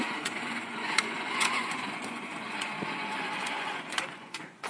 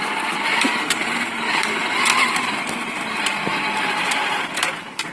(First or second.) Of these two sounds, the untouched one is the second